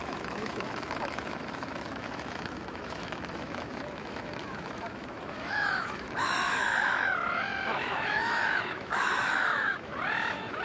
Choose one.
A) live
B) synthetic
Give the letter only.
B